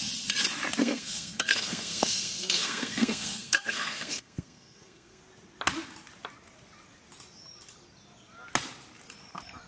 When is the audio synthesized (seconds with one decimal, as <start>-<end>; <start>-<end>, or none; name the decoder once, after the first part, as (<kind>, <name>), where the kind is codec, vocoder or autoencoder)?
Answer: 0.8-5.2 (codec, SNAC)